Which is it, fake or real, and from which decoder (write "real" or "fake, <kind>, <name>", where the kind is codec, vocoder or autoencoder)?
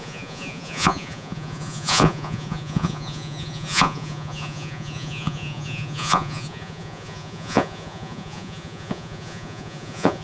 fake, vocoder, Vocos